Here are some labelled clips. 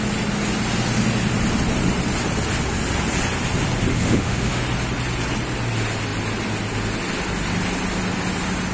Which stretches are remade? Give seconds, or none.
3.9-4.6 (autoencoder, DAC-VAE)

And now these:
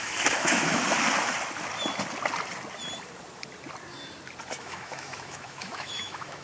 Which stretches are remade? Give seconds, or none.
0.0-0.8 (autoencoder, DAC-VAE); 4.6-6.4

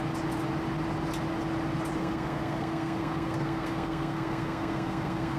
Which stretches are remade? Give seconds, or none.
2.0-5.4 (codec, SNAC)

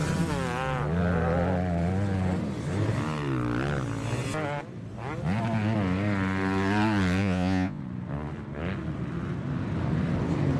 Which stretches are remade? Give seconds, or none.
7.2-7.8 (vocoder, Vocos)